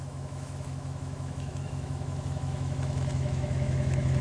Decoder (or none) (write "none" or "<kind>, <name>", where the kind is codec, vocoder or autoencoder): autoencoder, DAC-VAE